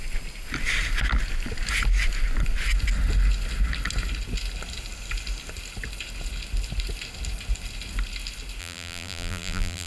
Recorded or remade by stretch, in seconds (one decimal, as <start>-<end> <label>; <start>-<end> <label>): 0.0-8.6 recorded; 8.6-9.9 remade